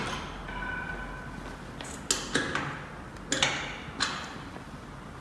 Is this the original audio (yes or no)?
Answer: yes